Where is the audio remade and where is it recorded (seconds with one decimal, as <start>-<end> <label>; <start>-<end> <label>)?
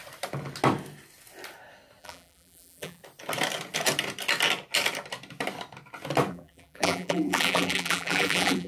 0.0-2.0 recorded; 2.0-3.0 remade; 3.0-6.3 recorded; 6.3-8.7 remade